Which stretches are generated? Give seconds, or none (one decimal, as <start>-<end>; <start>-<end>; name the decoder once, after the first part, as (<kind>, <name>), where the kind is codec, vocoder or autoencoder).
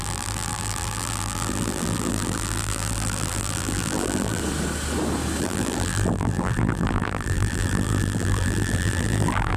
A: 0.0-4.4 (vocoder, BigVGAN v2); 5.4-9.6